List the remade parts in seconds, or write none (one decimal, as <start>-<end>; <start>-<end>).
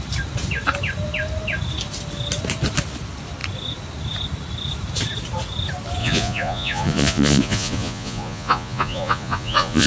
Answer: 6.0-9.9